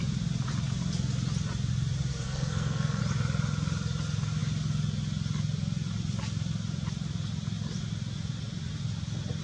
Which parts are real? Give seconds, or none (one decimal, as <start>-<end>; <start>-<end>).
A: 0.0-2.1; 3.0-9.4